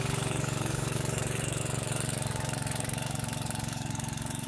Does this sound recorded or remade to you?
remade